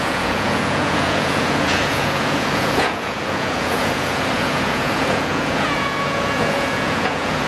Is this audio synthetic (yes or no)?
yes